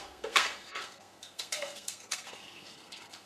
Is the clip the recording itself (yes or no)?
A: no